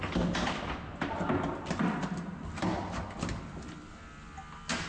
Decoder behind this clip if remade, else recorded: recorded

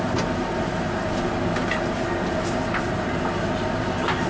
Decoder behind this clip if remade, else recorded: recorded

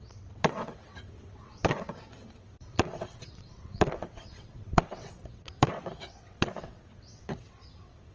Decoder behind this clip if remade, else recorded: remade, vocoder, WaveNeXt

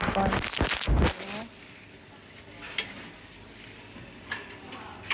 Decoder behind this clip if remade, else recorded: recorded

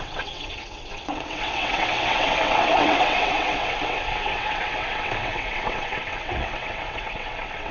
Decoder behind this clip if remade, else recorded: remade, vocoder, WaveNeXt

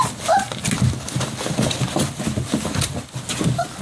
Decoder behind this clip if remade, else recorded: recorded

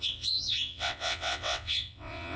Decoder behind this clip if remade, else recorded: remade, vocoder, WaveNeXt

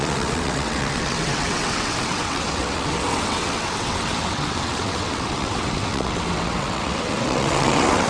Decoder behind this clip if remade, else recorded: remade, vocoder, WaveNeXt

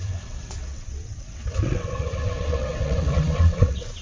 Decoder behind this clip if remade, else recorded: remade, vocoder, WaveNeXt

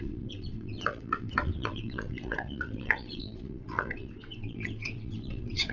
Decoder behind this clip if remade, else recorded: remade, vocoder, WaveNeXt